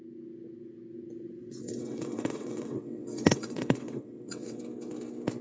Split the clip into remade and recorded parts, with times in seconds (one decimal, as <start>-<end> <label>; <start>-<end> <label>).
0.0-1.4 recorded; 1.4-4.6 remade; 4.6-5.4 recorded